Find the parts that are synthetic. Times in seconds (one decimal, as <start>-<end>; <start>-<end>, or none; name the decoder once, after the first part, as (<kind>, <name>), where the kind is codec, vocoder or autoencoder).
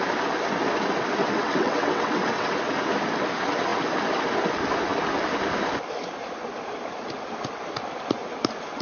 1.2-2.5 (vocoder, WaveNeXt)